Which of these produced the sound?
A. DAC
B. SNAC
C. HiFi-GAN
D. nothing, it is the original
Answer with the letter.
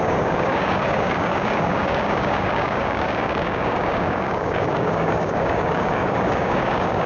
A